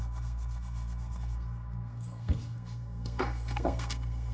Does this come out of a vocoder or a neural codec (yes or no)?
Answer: yes